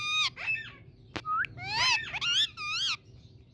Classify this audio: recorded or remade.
recorded